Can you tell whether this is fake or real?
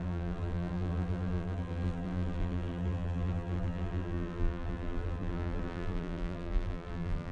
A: fake